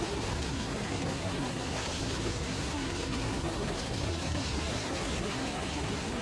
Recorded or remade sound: remade